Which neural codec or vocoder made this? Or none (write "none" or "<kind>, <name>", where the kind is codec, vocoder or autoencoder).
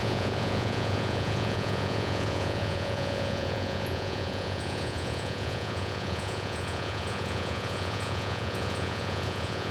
vocoder, Vocos